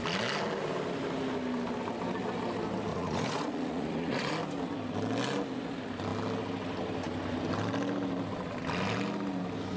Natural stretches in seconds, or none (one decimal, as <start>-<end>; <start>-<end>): 0.0-2.9; 4.3-9.8